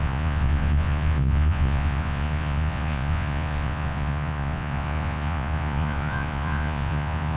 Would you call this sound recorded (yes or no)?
no